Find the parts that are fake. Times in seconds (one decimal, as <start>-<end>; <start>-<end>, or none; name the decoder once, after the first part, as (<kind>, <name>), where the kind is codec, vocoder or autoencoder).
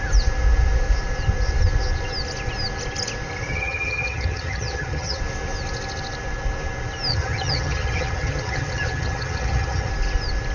3.5-5.2 (vocoder, HiFi-GAN); 7.1-9.9